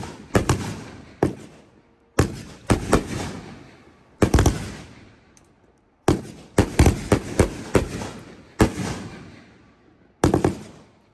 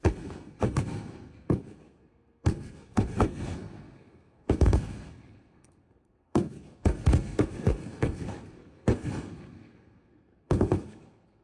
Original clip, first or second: first